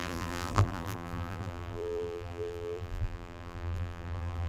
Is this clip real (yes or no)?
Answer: no